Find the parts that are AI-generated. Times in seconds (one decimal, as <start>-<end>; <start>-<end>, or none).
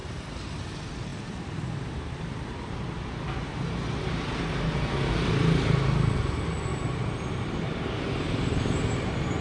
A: 0.0-0.6; 1.1-4.9; 6.7-7.9